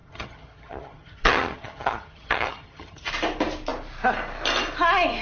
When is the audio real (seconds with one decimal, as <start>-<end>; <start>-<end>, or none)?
3.1-5.2